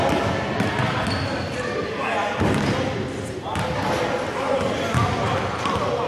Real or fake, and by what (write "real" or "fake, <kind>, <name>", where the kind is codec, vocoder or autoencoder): real